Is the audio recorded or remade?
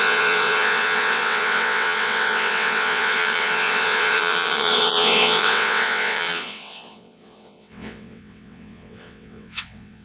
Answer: remade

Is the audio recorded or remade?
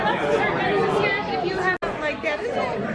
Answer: recorded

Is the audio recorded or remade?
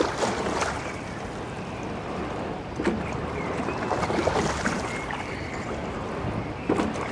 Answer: recorded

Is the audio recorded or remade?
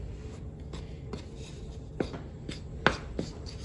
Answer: recorded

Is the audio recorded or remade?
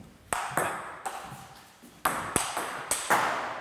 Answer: recorded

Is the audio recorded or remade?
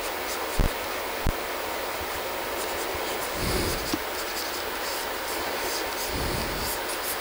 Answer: recorded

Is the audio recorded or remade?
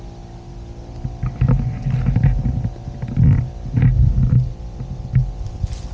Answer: recorded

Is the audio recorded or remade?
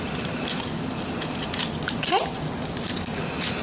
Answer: recorded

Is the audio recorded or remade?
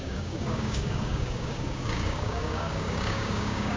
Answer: remade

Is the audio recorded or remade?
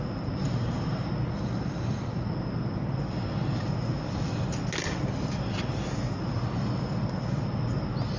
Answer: recorded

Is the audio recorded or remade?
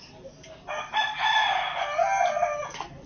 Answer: recorded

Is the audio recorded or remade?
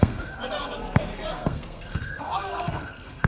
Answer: remade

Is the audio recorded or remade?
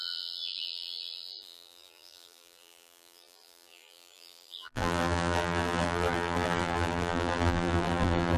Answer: remade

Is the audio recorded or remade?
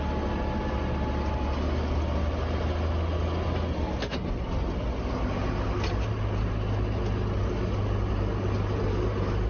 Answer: recorded